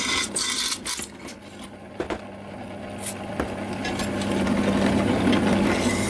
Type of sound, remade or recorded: recorded